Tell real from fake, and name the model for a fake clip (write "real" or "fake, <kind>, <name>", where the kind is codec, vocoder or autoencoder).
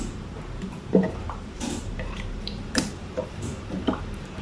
fake, vocoder, BigVGAN v2